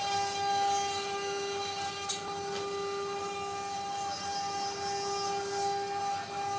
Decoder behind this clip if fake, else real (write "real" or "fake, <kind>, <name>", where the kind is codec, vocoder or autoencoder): real